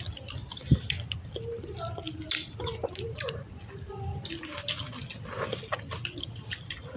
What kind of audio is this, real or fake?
real